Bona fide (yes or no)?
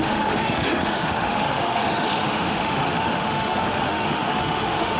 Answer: no